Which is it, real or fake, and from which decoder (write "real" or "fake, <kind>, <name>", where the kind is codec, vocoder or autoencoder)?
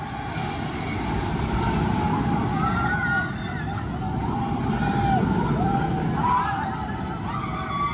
real